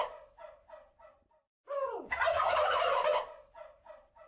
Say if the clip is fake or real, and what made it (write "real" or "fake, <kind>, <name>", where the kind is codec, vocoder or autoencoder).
real